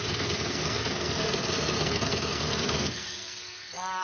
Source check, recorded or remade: remade